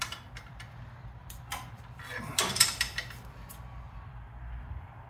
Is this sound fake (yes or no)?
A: yes